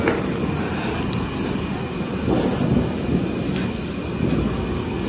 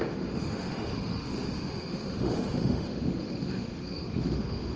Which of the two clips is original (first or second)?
first